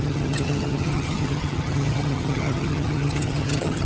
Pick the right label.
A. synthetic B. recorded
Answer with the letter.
A